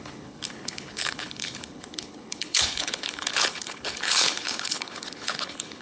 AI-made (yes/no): yes